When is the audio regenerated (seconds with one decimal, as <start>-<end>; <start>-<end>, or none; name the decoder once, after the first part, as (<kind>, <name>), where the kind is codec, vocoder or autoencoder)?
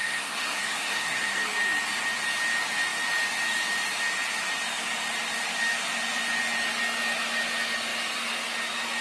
0.0-1.4 (codec, SNAC)